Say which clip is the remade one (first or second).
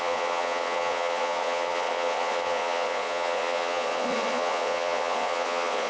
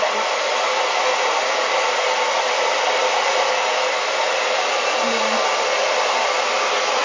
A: first